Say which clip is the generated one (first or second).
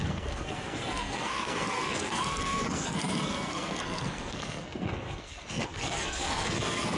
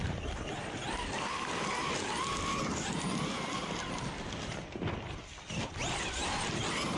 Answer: first